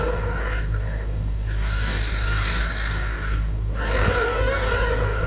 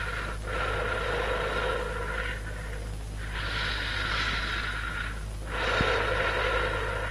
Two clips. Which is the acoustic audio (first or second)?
second